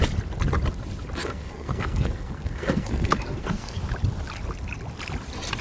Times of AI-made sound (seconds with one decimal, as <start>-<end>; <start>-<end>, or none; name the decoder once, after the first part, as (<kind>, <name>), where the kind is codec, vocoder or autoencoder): 1.2-3.8 (codec, SNAC)